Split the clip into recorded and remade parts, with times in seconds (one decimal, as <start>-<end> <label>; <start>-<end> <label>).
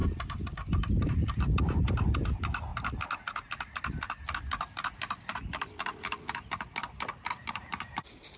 0.0-1.1 recorded; 1.1-2.7 remade; 2.7-7.3 recorded; 7.3-8.4 remade